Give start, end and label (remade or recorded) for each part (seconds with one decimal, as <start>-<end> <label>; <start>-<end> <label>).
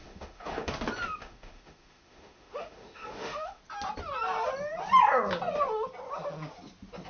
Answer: 0.0-0.7 remade; 0.7-1.2 recorded; 1.2-3.6 remade; 3.6-7.1 recorded